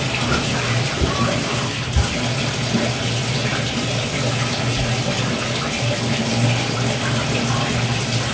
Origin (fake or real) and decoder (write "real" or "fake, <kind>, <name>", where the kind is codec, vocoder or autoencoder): real